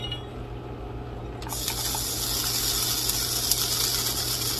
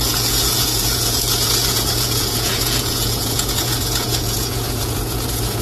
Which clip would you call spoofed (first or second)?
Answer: second